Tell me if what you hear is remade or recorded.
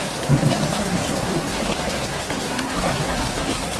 remade